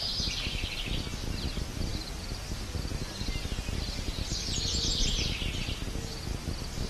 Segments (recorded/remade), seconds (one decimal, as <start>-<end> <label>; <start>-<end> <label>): 0.0-6.9 recorded